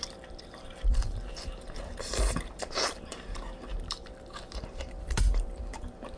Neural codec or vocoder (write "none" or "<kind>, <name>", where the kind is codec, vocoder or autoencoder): vocoder, BigVGAN v2